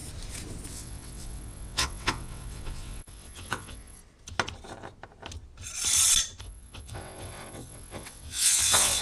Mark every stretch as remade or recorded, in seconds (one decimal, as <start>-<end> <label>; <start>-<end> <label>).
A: 0.0-0.7 recorded; 0.7-4.0 remade; 4.0-6.4 recorded; 6.4-9.0 remade